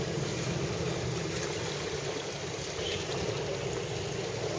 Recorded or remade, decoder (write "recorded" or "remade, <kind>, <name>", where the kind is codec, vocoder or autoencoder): recorded